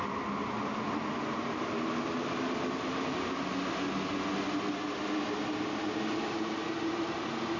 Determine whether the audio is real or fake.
real